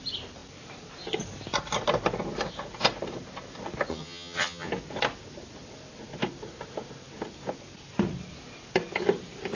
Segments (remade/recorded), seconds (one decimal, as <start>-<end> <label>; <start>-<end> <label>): 0.0-3.9 recorded; 3.9-4.7 remade; 4.7-9.6 recorded